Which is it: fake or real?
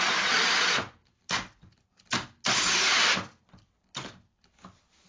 real